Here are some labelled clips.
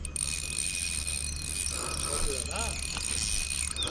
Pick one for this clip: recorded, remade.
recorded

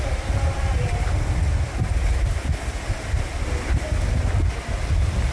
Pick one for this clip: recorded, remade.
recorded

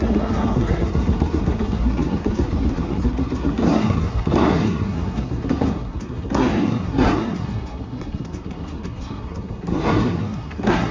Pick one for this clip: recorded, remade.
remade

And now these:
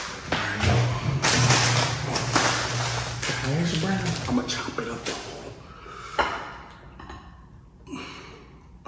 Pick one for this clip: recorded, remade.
recorded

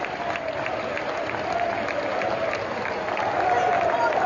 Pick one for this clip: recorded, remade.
recorded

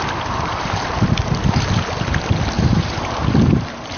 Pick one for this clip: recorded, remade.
remade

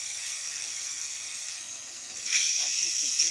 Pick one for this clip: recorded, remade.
remade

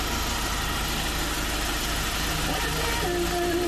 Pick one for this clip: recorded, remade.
recorded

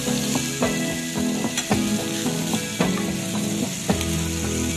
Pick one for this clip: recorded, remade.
recorded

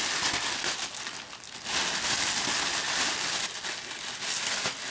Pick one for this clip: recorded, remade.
recorded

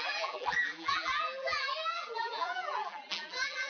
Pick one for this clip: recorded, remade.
remade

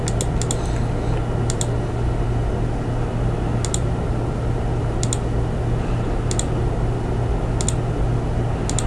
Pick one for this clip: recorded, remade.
recorded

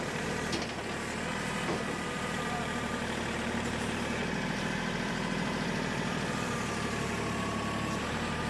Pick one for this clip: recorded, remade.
remade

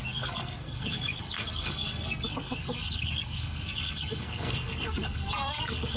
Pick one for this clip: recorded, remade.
remade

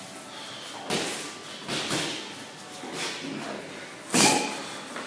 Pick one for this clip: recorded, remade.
recorded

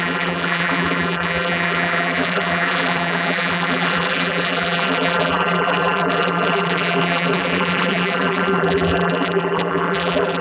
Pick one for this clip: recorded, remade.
remade